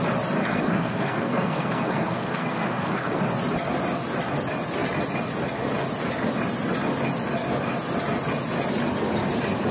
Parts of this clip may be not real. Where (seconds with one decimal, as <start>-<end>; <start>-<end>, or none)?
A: 0.4-3.2